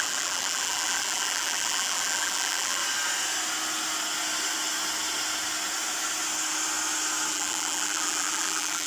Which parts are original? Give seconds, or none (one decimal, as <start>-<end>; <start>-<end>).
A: 2.8-7.3